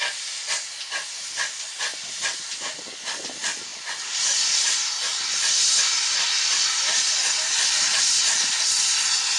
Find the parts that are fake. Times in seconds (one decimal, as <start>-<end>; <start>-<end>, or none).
none